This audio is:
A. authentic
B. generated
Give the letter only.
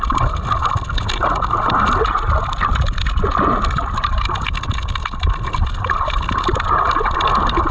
A